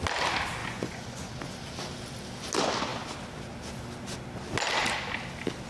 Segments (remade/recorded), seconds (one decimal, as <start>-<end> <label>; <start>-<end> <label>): 0.0-0.6 recorded; 0.6-1.3 remade; 1.3-5.7 recorded